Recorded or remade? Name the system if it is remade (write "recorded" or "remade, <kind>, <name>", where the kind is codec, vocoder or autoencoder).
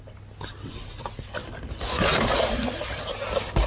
recorded